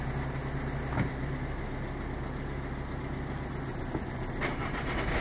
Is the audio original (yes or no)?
yes